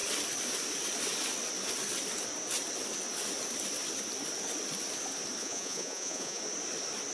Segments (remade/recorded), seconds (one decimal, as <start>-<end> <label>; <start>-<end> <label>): 0.0-5.4 recorded; 5.4-6.4 remade; 6.4-7.1 recorded